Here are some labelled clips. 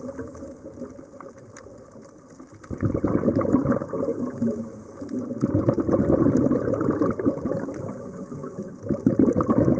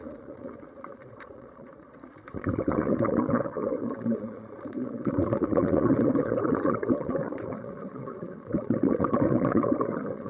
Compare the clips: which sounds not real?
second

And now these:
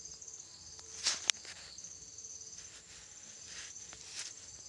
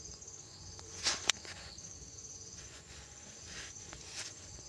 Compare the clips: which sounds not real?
second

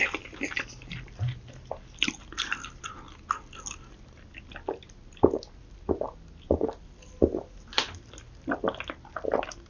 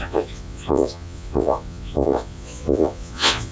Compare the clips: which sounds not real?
second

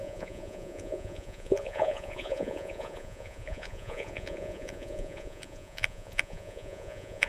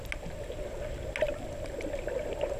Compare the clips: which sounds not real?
first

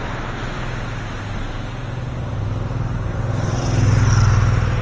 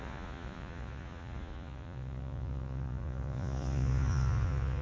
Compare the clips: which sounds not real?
second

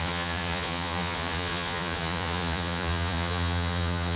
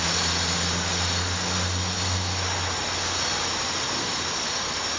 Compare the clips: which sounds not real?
first